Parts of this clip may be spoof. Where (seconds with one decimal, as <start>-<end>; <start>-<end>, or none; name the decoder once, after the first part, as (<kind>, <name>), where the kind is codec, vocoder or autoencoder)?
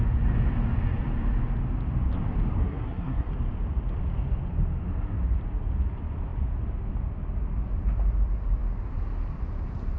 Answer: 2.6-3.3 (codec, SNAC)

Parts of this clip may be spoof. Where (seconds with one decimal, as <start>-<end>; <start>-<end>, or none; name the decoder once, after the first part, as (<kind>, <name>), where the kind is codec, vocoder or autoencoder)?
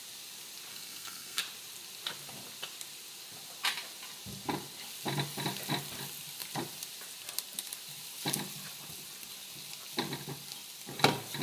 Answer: 0.7-1.4 (codec, SNAC)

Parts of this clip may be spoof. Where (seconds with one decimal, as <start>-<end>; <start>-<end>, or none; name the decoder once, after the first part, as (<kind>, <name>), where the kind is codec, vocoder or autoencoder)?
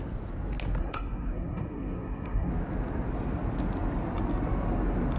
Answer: 0.8-2.5 (codec, SNAC)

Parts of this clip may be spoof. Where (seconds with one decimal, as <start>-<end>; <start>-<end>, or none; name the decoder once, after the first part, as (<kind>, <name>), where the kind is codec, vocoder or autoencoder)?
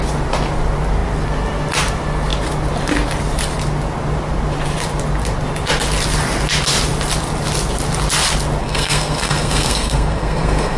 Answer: 8.6-10.8 (codec, SNAC)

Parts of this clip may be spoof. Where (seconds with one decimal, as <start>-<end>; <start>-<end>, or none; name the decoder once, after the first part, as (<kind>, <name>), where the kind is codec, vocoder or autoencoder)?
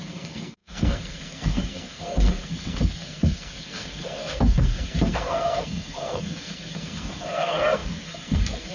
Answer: 0.0-8.7 (codec, SNAC)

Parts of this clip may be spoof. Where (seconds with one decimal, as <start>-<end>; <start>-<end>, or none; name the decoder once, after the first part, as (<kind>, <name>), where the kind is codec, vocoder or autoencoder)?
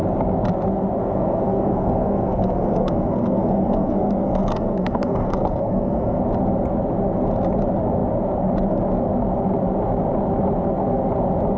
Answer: 1.0-6.2 (codec, SNAC)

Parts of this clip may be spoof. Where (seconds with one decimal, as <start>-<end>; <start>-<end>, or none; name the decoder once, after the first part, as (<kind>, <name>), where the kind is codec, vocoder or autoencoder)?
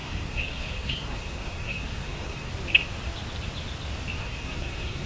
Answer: 0.0-2.5 (codec, SNAC); 4.2-5.1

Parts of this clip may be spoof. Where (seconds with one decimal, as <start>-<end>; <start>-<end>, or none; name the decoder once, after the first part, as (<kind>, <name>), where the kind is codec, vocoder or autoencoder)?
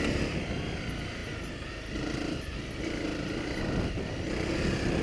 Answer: none